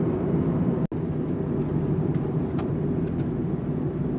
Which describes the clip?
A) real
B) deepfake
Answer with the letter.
A